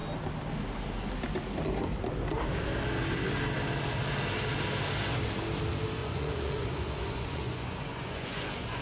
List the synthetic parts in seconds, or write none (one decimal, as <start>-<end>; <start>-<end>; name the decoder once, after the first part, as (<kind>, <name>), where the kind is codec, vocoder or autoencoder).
6.0-8.8 (vocoder, Vocos)